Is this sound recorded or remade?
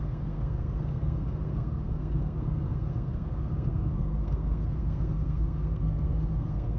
remade